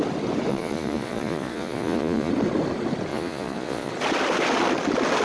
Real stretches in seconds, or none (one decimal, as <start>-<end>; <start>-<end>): 0.0-0.5; 2.3-3.1; 3.9-5.2